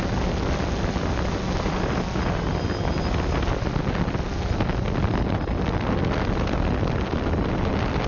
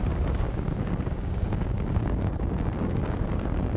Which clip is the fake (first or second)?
second